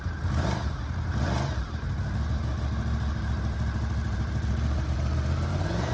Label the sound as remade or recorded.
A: remade